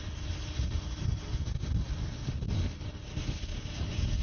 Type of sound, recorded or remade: recorded